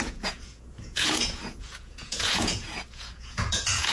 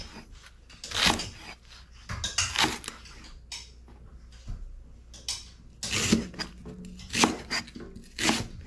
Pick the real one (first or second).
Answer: second